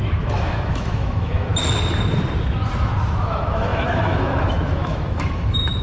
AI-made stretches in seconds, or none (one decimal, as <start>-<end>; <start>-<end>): 0.0-1.5; 3.3-5.8